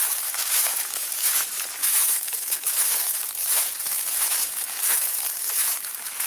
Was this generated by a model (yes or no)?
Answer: yes